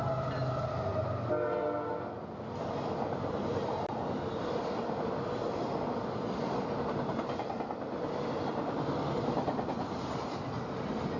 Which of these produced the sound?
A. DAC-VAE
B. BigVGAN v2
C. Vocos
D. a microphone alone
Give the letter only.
D